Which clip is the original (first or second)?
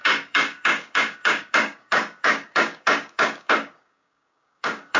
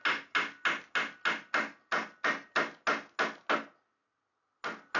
second